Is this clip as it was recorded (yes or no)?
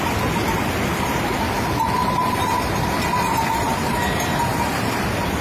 yes